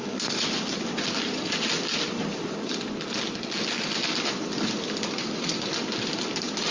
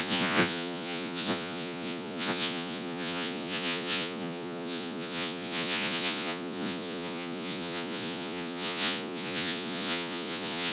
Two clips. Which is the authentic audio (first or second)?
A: first